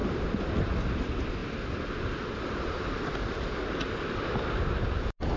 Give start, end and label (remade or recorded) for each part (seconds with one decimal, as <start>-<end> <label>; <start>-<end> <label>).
0.0-5.4 recorded